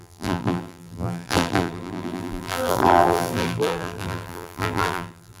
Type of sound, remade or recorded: remade